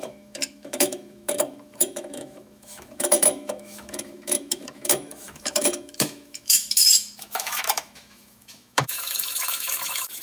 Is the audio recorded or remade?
remade